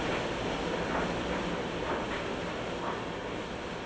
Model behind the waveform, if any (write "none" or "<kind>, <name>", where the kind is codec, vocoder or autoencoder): none